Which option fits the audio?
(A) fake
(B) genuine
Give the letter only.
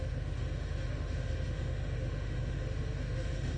A